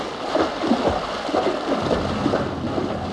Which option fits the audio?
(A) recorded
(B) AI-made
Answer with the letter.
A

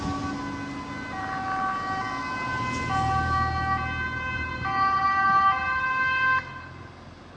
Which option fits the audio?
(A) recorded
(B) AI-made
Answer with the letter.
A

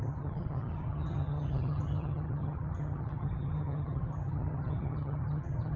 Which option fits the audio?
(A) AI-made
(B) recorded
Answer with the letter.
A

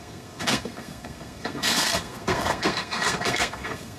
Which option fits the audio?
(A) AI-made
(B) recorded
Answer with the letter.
A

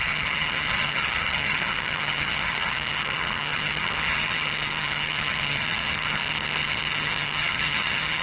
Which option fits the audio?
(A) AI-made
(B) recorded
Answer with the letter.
A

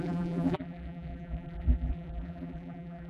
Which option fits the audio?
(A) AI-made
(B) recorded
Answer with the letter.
A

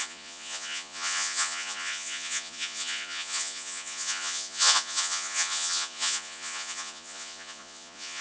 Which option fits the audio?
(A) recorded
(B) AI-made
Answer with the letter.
B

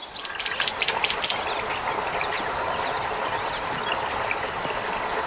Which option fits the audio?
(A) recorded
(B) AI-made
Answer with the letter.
A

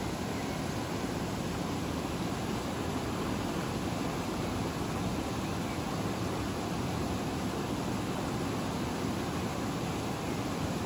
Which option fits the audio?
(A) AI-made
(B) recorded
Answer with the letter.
B